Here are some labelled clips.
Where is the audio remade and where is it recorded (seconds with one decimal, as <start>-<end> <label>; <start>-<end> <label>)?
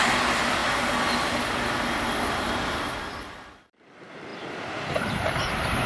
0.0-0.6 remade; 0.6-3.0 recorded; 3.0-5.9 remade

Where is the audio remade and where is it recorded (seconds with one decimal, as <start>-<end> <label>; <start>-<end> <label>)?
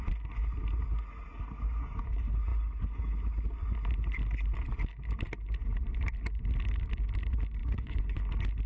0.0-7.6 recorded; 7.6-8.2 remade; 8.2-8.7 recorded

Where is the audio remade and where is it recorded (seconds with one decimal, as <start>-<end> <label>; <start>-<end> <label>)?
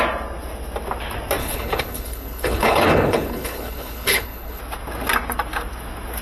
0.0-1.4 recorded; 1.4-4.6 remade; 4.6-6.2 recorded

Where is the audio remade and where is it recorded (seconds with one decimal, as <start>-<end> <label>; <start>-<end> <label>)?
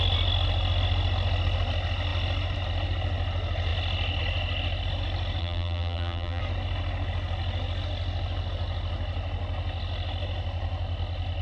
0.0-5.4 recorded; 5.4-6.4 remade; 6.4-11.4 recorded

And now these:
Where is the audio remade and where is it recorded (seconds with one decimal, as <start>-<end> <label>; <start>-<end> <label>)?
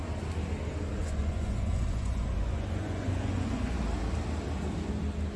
0.0-1.0 recorded; 1.0-3.8 remade; 3.8-5.4 recorded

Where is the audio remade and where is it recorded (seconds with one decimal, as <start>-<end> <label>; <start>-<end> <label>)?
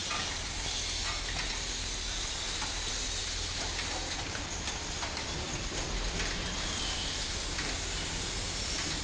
0.0-3.2 recorded; 3.2-7.4 remade; 7.4-9.0 recorded